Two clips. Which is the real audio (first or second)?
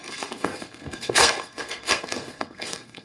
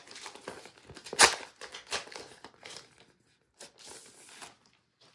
second